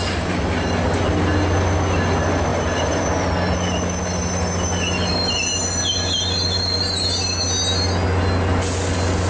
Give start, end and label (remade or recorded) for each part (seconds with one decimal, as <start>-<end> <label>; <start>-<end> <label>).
0.0-2.5 recorded; 2.5-3.0 remade; 3.0-9.3 recorded